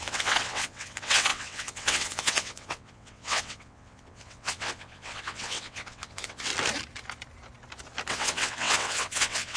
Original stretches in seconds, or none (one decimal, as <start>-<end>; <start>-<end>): 6.5-8.1